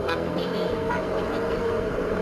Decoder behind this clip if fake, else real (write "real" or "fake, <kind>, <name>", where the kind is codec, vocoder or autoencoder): fake, codec, SNAC